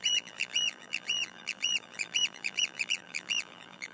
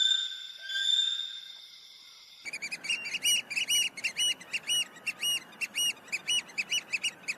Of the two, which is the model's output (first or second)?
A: first